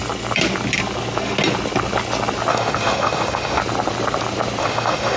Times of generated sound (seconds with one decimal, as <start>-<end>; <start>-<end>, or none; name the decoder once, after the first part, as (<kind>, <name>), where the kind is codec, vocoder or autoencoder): 2.5-3.6 (autoencoder, DAC-VAE); 4.6-5.2